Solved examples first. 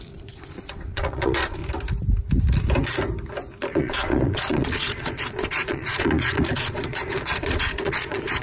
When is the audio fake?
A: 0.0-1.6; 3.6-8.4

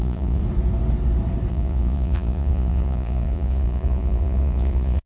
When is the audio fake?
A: 0.0-0.4; 1.5-5.1